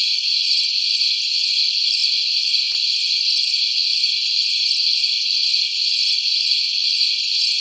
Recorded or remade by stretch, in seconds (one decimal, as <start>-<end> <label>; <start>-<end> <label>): 0.0-7.6 recorded